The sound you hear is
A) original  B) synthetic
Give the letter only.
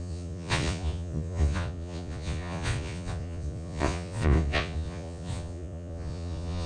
B